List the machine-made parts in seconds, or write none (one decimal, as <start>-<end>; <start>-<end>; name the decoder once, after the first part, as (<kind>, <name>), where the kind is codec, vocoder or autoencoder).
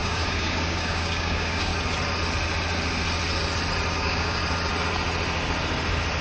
0.0-1.7 (codec, DAC); 3.9-4.4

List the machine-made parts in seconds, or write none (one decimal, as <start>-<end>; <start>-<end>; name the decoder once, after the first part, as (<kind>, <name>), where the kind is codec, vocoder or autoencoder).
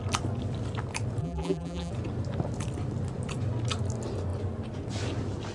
1.2-1.9 (vocoder, BigVGAN v2)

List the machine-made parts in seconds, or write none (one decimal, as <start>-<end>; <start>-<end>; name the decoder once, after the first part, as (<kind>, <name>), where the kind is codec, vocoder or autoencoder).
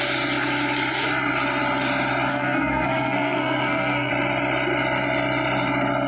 2.3-4.1 (codec, SNAC)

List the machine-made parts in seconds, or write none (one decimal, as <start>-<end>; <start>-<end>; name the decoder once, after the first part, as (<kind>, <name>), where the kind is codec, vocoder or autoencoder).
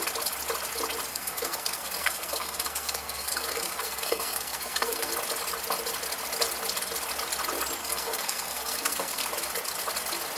1.1-5.1 (codec, SNAC); 7.8-9.3